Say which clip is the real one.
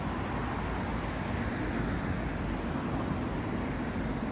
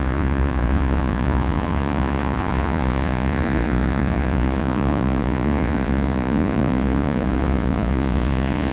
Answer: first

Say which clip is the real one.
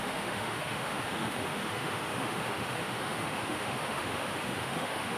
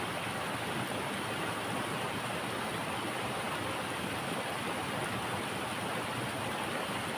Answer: second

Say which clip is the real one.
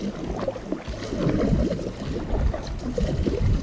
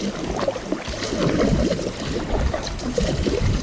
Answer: first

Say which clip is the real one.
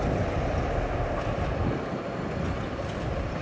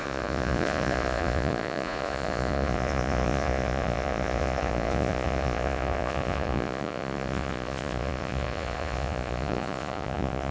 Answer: first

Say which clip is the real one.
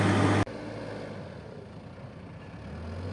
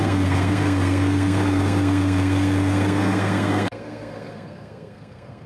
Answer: first